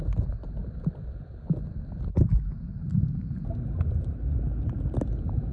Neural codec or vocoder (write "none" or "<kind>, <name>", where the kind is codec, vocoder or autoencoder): none